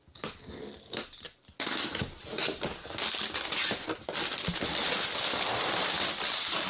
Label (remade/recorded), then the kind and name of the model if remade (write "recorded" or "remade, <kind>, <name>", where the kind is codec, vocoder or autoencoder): recorded